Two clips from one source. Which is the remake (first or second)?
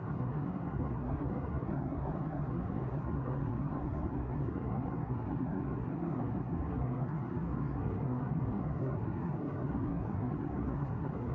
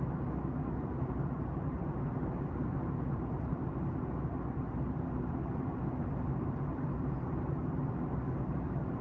first